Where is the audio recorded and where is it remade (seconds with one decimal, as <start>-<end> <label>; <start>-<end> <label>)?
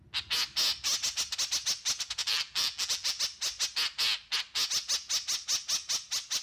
0.0-2.2 recorded; 2.2-3.2 remade; 3.2-6.4 recorded